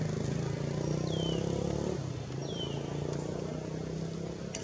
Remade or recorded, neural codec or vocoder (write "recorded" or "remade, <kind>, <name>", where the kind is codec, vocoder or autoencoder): recorded